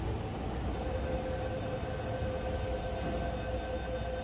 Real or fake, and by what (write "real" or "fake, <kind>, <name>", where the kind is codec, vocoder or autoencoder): real